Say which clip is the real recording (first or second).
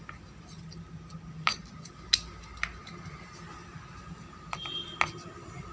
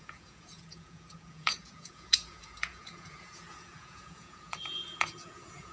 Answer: first